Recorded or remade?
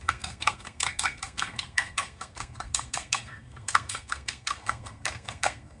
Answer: remade